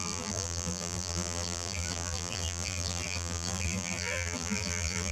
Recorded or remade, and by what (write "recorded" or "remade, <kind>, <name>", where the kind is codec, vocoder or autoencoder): remade, vocoder, BigVGAN v2